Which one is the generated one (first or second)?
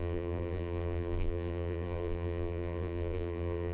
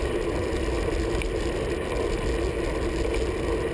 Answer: first